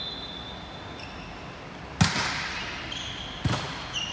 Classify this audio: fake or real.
real